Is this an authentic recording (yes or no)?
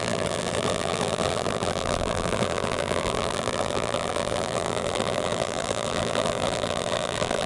no